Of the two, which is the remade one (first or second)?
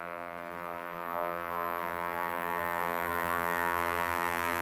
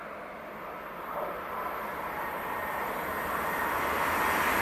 first